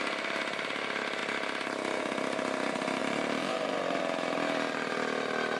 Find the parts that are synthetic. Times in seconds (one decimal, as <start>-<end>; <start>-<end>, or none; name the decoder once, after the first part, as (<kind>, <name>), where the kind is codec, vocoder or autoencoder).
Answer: 3.0-4.0 (vocoder, BigVGAN v2)